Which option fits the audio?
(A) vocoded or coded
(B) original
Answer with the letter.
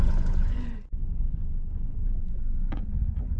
A